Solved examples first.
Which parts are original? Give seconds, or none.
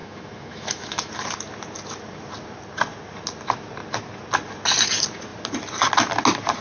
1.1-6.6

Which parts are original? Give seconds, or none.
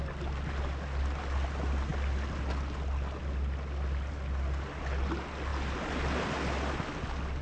0.0-7.4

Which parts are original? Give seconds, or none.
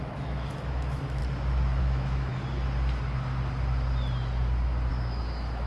1.2-1.8; 2.3-4.9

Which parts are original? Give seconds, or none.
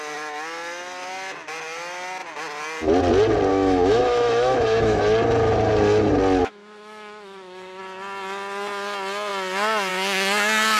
0.0-3.5; 5.0-6.4; 7.8-10.8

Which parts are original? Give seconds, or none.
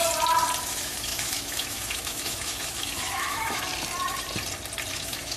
0.0-0.6; 3.7-4.9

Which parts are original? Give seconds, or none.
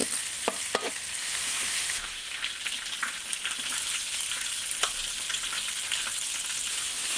0.0-1.2; 2.4-6.7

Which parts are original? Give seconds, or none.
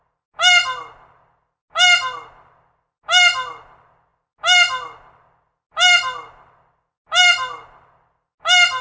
0.0-8.8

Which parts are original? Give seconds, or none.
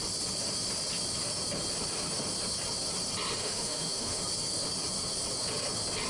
0.0-3.4; 4.2-6.1